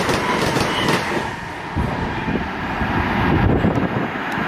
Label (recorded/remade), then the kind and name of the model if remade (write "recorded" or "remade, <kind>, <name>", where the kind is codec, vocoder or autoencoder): recorded